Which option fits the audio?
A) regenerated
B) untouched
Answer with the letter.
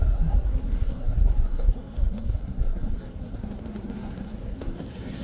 A